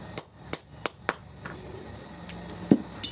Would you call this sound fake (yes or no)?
no